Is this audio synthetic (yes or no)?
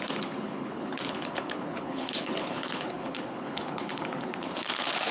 yes